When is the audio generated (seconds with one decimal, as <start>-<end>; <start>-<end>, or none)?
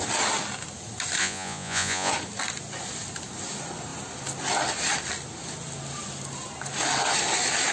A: 1.2-2.1